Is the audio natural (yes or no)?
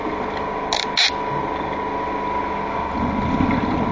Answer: yes